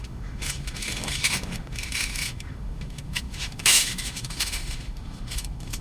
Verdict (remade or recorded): remade